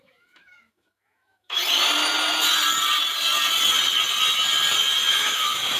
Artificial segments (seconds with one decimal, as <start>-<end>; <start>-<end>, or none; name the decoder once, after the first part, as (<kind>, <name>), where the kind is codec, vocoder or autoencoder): 0.0-1.6 (autoencoder, DAC-VAE); 5.1-5.8